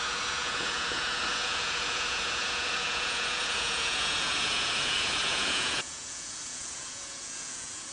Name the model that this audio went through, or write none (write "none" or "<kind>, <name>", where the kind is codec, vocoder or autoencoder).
vocoder, Vocos